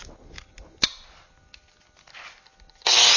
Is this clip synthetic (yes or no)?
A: no